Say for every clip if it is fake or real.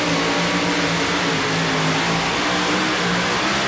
real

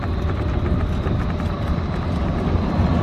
real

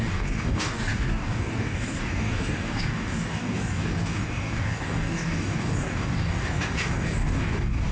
fake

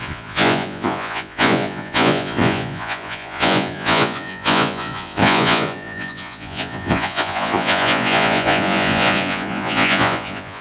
fake